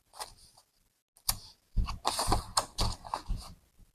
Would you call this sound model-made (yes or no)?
no